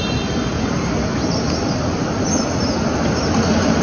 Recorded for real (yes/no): yes